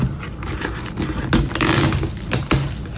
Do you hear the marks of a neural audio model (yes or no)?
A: no